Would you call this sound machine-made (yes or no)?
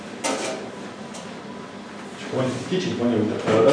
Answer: no